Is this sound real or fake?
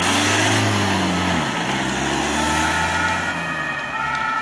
real